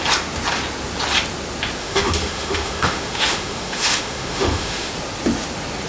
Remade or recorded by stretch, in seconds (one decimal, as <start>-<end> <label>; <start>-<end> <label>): 0.0-1.8 recorded; 1.8-4.9 remade; 4.9-5.9 recorded